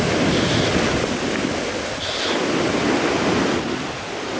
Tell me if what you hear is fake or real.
real